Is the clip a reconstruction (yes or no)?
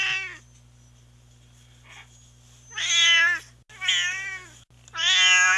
no